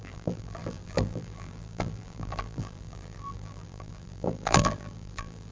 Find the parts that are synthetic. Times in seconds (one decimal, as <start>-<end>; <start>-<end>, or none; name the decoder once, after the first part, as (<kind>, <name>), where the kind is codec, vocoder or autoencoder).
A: 0.0-5.5 (vocoder, BigVGAN v2)